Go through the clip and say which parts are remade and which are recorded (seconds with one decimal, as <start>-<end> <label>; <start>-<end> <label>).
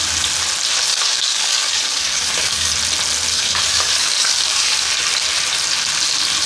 0.0-0.9 recorded; 0.9-2.7 remade; 2.7-3.3 recorded; 3.3-4.9 remade; 4.9-6.5 recorded